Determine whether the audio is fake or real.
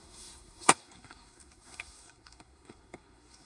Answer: fake